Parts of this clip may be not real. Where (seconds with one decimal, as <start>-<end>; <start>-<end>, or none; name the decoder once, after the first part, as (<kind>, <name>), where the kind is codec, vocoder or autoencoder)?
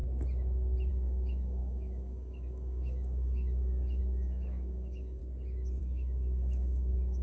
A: 0.9-5.2 (autoencoder, DAC-VAE); 5.8-7.2